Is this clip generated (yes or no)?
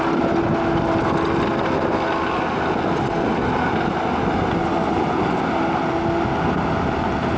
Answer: no